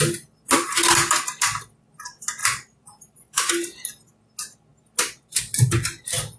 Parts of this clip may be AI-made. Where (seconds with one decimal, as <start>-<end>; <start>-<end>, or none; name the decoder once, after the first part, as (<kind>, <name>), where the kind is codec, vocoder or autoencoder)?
2.4-3.5 (vocoder, BigVGAN v2)